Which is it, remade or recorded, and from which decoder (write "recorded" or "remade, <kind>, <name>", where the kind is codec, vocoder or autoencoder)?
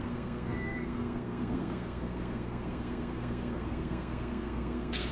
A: remade, codec, SNAC